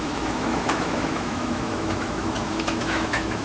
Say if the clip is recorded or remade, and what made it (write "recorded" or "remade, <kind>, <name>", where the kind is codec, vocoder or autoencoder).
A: remade, autoencoder, DAC-VAE